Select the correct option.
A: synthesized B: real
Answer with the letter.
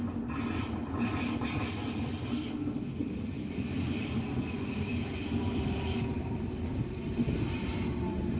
B